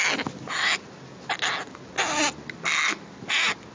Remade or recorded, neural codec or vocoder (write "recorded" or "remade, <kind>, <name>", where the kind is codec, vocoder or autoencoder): recorded